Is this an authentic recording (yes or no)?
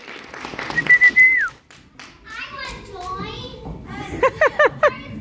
no